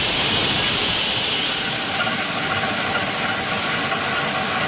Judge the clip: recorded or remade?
recorded